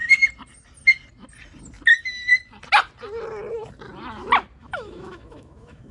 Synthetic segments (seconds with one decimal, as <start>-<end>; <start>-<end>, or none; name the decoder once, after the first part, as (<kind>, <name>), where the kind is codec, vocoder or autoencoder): 4.6-5.9 (autoencoder, DAC-VAE)

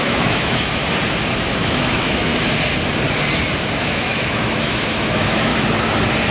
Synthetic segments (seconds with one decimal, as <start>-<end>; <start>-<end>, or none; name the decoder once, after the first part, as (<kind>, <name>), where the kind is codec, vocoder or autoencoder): 0.0-0.8 (autoencoder, DAC-VAE); 1.6-2.3; 3.7-5.5

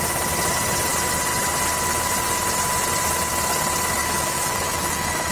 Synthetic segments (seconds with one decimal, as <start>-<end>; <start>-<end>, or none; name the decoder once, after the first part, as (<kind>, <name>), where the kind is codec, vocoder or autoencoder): 4.0-5.3 (autoencoder, DAC-VAE)

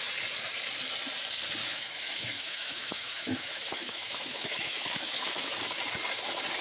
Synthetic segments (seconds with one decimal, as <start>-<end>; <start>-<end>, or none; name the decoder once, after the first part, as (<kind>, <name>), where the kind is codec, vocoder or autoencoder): 1.6-5.6 (autoencoder, DAC-VAE)

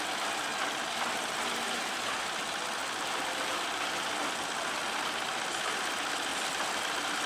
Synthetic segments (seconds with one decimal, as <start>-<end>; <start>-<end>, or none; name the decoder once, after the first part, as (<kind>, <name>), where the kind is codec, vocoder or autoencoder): 0.5-1.1 (vocoder, BigVGAN v2); 2.8-4.8; 6.3-6.8

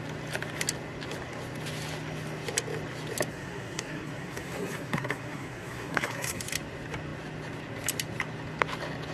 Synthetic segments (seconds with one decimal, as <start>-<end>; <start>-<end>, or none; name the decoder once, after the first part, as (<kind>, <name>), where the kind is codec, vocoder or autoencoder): 3.3-6.4 (codec, SNAC)

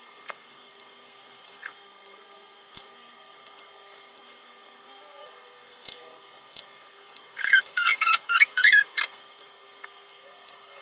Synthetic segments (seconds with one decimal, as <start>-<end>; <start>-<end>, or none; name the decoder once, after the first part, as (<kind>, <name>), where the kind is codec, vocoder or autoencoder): 0.0-10.8 (codec, SNAC)

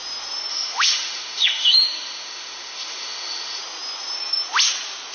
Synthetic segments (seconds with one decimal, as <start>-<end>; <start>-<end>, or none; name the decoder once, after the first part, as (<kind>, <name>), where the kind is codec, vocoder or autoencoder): 0.5-3.6 (autoencoder, DAC-VAE)